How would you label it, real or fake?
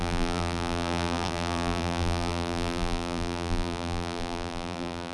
fake